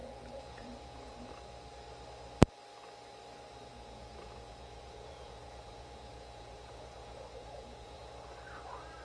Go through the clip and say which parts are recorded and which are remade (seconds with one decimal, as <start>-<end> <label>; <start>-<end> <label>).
0.0-1.3 remade; 1.3-3.7 recorded; 3.7-8.0 remade; 8.0-9.0 recorded